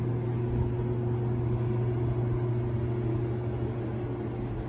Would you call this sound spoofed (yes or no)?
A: no